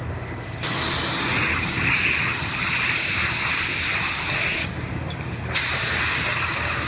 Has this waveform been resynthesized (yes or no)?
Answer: no